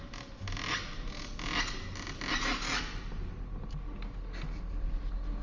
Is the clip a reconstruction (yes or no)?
no